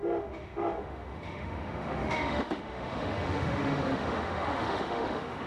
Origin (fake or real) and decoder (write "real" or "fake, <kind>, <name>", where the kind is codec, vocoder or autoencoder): fake, autoencoder, DAC-VAE